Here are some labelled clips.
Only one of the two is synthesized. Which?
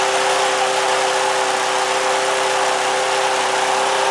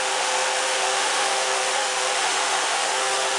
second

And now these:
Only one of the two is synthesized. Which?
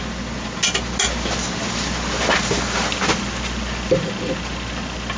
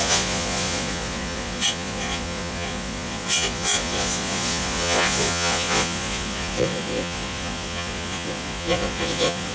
second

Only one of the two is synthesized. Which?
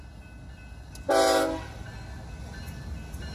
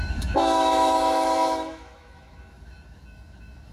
second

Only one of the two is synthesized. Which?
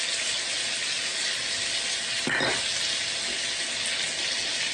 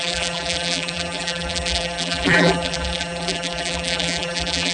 second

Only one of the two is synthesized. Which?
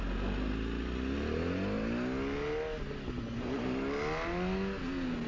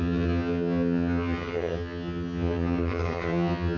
second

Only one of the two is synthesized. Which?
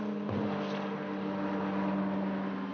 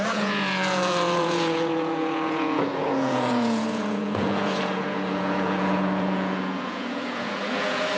second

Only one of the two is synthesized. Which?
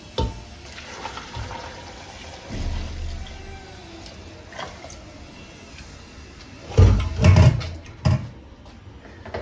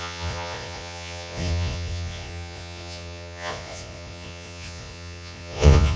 second